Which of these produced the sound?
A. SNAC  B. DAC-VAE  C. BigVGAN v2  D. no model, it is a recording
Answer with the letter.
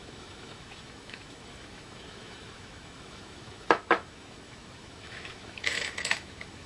B